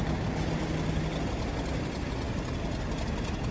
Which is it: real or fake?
real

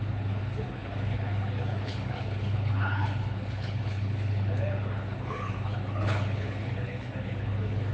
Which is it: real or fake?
fake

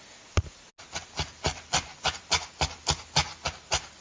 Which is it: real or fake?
real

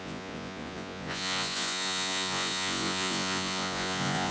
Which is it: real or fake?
fake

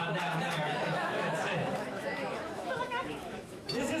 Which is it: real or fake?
fake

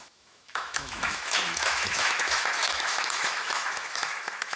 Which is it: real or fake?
fake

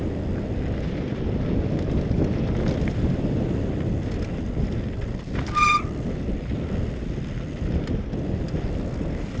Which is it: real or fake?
real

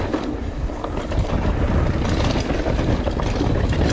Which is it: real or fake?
real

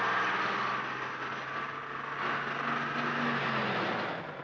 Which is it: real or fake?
real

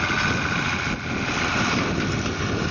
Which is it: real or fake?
real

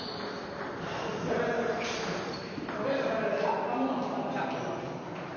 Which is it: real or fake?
real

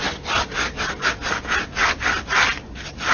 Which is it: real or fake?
real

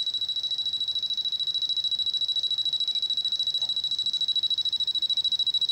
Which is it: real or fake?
real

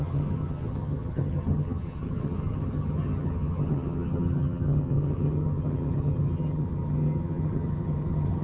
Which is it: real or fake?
fake